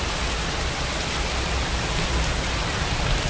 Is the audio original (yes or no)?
yes